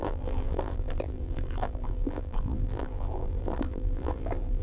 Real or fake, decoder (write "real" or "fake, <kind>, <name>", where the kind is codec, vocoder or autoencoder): fake, vocoder, BigVGAN v2